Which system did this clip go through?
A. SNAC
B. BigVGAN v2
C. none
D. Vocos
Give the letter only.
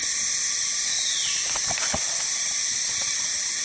B